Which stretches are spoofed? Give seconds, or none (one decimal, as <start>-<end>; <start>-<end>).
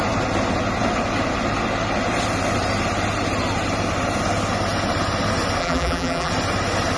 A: 5.6-6.3